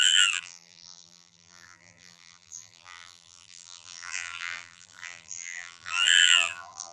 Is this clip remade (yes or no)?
yes